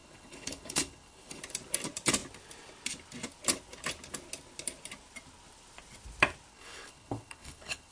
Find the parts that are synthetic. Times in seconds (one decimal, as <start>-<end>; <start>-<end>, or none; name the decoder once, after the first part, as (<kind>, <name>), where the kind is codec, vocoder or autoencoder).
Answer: 0.0-1.4 (codec, HILCodec); 6.5-7.9